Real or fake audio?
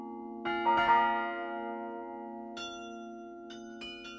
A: real